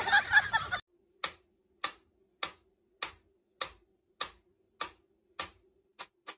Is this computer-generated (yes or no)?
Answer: no